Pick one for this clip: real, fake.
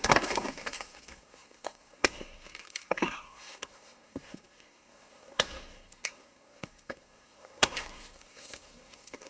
fake